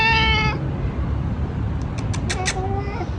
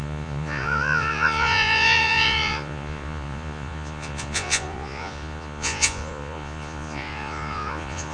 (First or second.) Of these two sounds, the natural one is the first